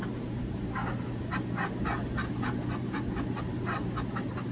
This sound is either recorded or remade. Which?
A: recorded